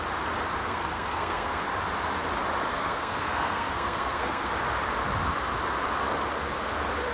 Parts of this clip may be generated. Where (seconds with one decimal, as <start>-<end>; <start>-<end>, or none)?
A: 0.6-1.6; 2.7-4.5